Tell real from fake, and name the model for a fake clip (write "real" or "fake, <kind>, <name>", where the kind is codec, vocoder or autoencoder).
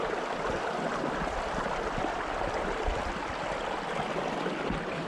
real